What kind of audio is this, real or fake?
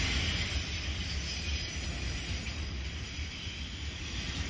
real